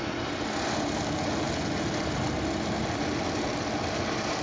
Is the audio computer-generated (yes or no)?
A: no